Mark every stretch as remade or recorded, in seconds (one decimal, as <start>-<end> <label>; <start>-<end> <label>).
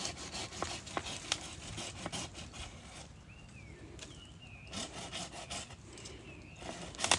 0.0-7.2 recorded